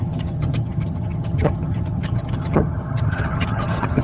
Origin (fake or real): fake